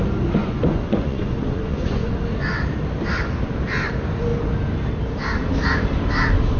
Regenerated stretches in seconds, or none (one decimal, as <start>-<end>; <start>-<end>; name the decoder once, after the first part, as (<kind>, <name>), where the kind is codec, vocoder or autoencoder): 0.4-2.1 (vocoder, Vocos)